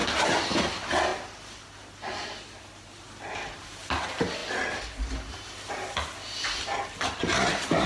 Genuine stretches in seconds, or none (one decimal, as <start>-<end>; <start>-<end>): 0.0-7.9